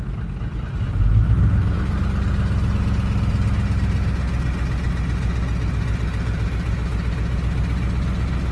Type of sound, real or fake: real